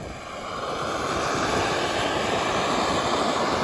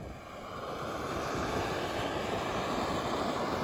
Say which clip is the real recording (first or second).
second